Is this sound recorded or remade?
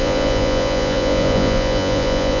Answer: remade